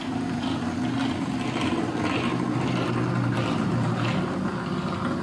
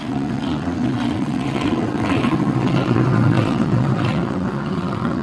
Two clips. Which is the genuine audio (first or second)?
first